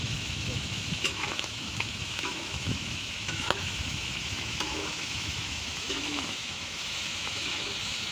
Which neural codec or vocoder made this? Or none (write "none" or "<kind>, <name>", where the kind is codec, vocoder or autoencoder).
autoencoder, DAC-VAE